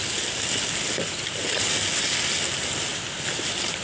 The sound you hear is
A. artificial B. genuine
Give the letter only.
B